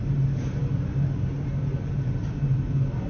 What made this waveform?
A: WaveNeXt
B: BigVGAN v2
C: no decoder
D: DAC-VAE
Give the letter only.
C